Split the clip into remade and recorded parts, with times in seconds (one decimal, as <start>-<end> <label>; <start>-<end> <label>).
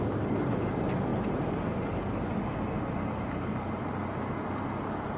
0.0-5.2 recorded